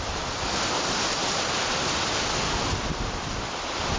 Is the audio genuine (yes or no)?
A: yes